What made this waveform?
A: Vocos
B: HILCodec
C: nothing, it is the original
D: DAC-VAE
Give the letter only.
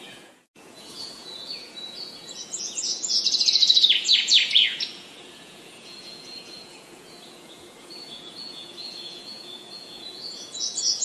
A